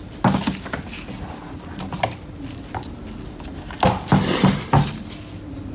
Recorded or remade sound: recorded